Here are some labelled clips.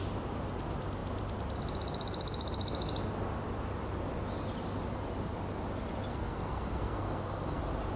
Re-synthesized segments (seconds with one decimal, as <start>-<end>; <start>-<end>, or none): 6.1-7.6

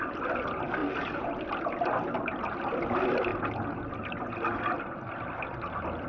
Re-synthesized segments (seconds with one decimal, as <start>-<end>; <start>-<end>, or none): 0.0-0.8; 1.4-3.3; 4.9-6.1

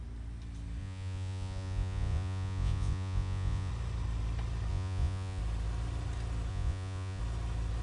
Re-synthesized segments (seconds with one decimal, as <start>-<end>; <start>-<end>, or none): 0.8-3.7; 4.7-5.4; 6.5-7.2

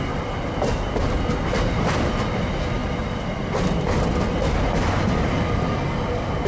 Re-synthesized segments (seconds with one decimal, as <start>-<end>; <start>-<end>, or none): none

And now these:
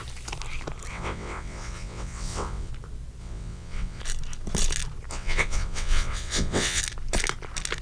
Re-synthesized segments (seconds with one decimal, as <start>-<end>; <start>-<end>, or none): 0.9-2.7; 3.2-4.0; 5.1-6.8

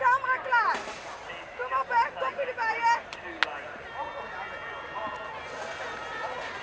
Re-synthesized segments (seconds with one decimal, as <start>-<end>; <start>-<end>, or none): none